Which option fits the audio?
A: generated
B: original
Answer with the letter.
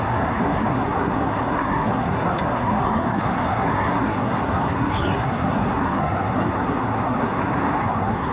A